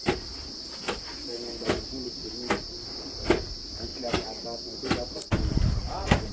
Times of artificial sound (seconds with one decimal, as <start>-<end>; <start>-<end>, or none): none